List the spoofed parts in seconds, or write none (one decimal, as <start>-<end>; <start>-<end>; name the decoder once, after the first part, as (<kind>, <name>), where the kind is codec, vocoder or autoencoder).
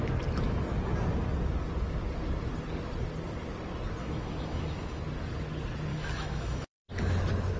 4.0-5.0 (autoencoder, DAC-VAE); 5.9-6.9